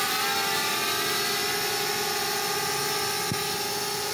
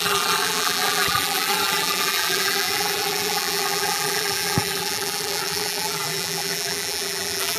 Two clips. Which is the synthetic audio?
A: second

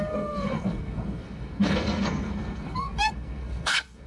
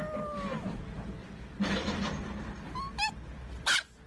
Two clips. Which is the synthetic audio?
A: first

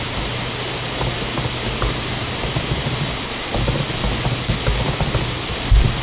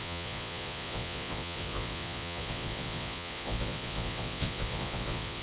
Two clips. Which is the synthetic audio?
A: second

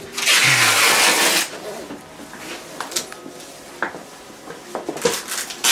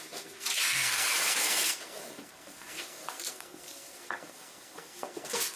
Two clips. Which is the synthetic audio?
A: second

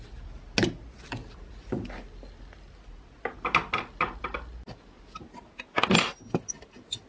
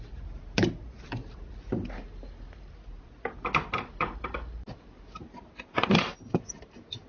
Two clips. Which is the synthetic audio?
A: second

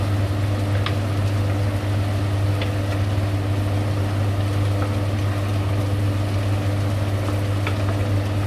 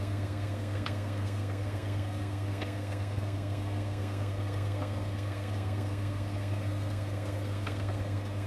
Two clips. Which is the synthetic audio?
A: second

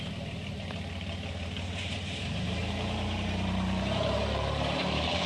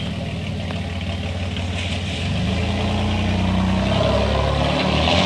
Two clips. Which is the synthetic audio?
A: first